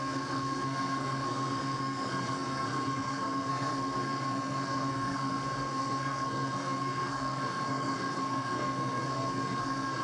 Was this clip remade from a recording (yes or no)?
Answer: yes